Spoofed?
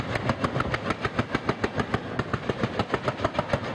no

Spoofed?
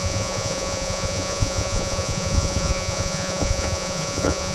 yes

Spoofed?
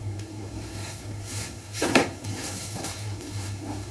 yes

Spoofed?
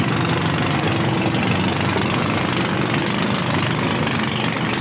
no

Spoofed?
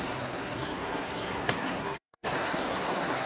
yes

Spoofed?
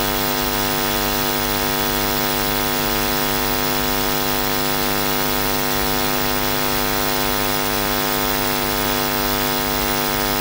no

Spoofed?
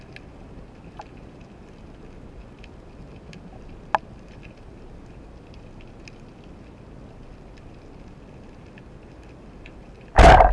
no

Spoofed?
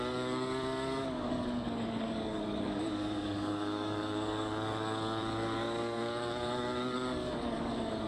yes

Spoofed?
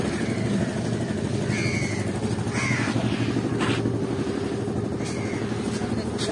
no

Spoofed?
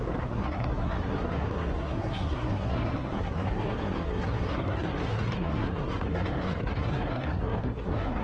yes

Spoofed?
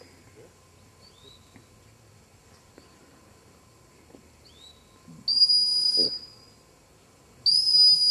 no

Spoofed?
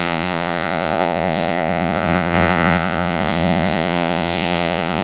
yes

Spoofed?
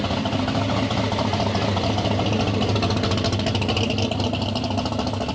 no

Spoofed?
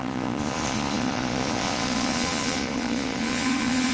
yes